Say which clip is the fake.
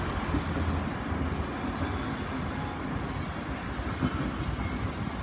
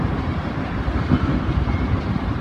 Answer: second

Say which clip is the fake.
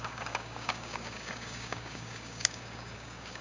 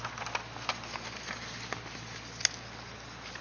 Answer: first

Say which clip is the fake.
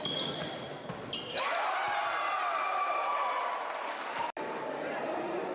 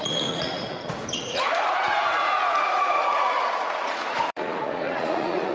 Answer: second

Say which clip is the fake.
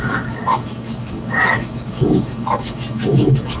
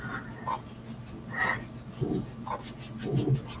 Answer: first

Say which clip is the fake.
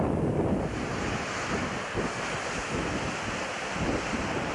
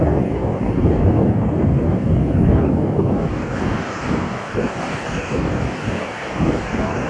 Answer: second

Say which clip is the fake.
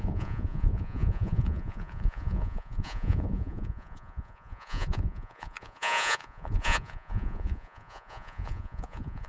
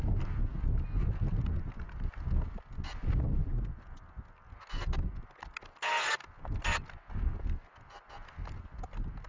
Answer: first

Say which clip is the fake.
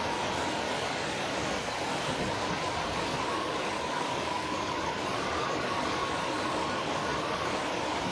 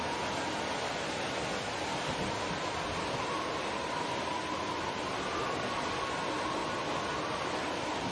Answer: first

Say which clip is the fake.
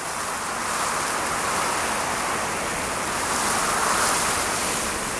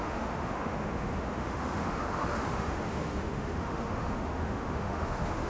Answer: second